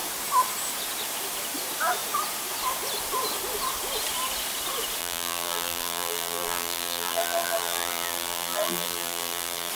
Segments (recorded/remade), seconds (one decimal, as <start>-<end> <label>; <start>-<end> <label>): 0.0-5.0 recorded; 5.0-9.7 remade